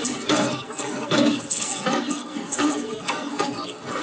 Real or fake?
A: fake